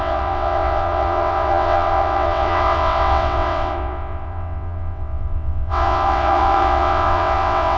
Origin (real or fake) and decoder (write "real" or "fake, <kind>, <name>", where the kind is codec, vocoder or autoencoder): fake, vocoder, WaveNeXt